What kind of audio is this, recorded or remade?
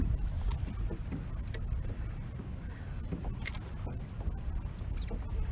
recorded